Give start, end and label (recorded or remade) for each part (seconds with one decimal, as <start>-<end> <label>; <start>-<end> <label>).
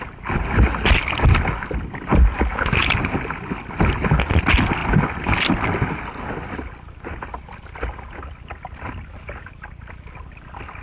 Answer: 0.0-2.1 recorded; 2.1-2.6 remade; 2.6-10.8 recorded